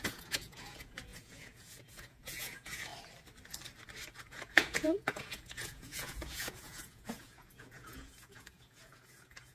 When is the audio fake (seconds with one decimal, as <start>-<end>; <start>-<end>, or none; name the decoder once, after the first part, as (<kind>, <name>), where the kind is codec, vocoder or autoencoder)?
0.0-2.9 (vocoder, Vocos); 4.1-9.5